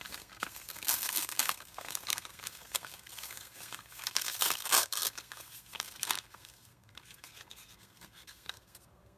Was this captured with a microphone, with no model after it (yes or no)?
no